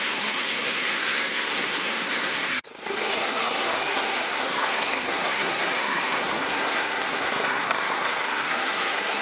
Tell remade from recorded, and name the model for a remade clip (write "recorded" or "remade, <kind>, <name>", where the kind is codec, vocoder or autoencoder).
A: remade, codec, SNAC